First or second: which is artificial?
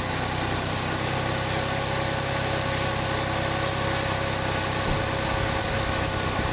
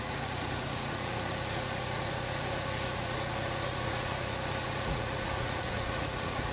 second